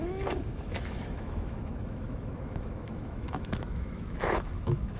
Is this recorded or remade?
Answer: remade